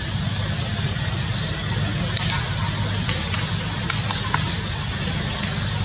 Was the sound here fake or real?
real